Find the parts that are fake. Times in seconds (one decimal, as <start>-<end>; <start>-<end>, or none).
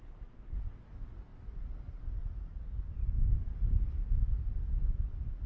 none